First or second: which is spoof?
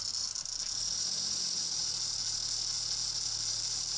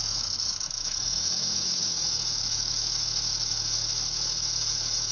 second